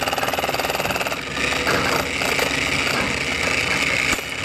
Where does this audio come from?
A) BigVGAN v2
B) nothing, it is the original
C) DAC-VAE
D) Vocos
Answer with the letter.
B